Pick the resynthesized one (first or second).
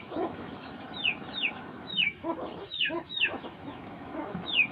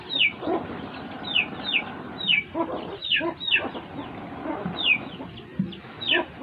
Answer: first